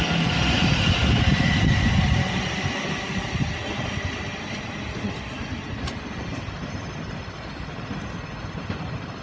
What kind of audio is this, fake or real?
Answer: real